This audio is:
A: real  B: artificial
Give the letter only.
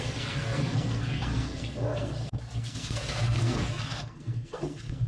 B